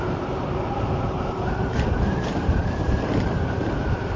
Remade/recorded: remade